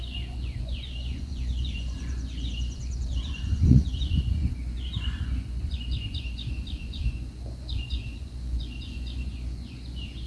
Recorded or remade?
remade